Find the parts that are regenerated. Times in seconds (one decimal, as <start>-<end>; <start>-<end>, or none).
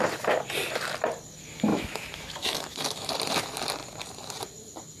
1.7-3.1